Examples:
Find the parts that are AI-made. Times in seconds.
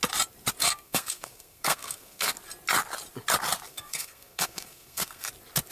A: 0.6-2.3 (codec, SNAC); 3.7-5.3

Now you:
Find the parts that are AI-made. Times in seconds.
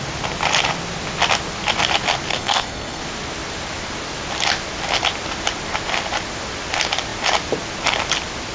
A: 2.3-3.0 (codec, SNAC)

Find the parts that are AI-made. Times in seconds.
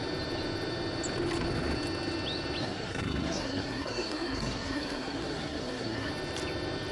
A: 2.6-6.1 (codec, SNAC)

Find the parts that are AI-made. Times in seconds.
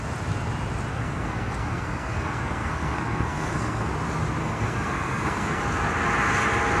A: 0.9-3.9 (codec, SNAC); 4.4-5.6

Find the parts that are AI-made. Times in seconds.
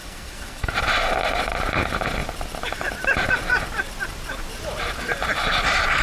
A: 0.0-0.7 (codec, SNAC)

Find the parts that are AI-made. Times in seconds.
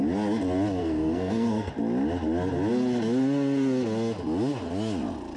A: 0.8-1.7 (codec, SNAC)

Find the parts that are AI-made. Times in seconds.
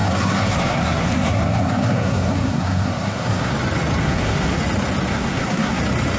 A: 0.0-3.5 (codec, SNAC); 4.0-4.6; 5.1-5.8